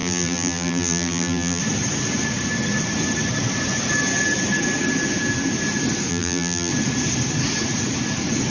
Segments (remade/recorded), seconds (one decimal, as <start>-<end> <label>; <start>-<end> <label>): 0.0-1.6 remade; 1.6-6.1 recorded; 6.1-6.7 remade; 6.7-8.5 recorded